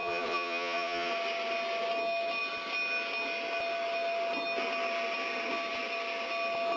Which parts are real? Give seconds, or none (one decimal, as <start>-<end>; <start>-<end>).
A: 1.1-6.8